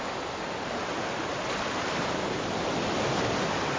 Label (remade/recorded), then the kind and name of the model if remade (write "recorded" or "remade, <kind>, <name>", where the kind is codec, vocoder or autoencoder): recorded